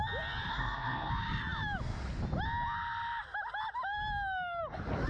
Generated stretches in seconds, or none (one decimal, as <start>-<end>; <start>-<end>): 0.5-1.1